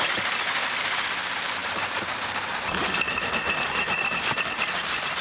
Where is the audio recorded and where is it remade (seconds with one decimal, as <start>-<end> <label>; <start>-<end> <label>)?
0.0-1.6 recorded; 1.6-2.7 remade; 2.7-5.2 recorded